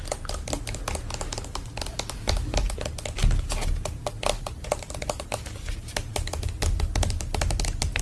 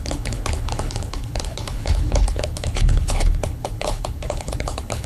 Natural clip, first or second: first